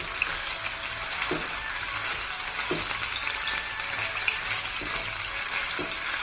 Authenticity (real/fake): real